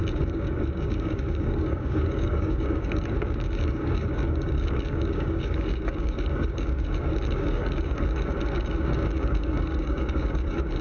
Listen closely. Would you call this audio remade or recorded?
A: remade